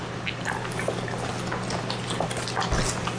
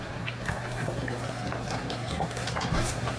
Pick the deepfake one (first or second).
second